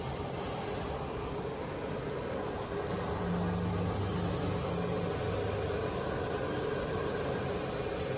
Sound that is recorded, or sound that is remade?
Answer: recorded